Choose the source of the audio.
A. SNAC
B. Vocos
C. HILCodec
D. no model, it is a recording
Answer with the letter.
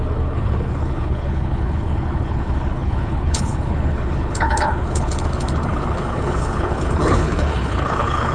C